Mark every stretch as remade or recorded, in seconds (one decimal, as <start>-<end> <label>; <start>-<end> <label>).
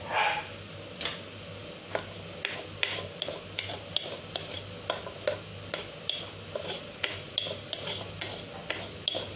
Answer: 0.0-9.4 recorded